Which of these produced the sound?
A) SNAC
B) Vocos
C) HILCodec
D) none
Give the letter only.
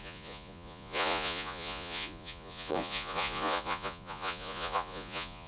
B